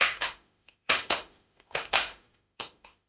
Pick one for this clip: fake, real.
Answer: fake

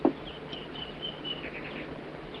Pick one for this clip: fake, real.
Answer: real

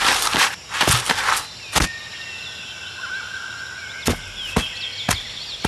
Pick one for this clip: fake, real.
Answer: real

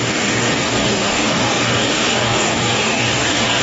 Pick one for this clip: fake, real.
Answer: fake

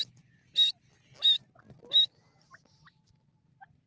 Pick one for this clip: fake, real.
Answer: real